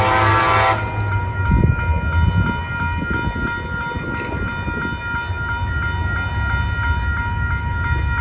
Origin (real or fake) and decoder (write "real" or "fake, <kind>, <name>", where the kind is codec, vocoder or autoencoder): real